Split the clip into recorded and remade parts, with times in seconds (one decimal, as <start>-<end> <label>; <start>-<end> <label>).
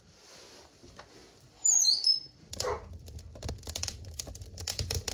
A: 0.0-5.1 remade